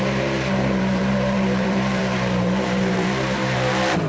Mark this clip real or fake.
fake